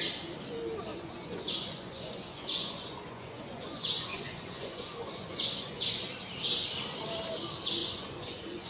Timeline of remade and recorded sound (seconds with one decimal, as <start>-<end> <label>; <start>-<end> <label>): 0.0-0.9 recorded; 0.9-6.1 remade; 6.1-7.8 recorded; 7.8-8.7 remade